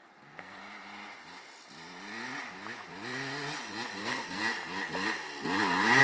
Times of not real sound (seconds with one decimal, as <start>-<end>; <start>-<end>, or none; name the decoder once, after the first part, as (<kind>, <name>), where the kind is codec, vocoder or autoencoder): 0.0-0.6 (codec, SNAC); 4.0-4.4